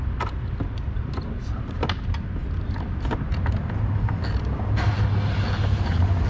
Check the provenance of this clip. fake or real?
real